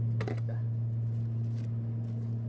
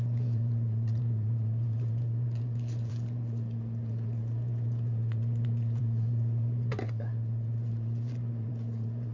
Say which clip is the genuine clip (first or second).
first